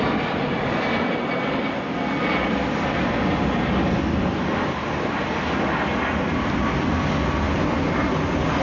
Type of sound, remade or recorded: recorded